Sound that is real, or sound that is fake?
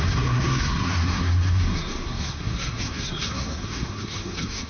fake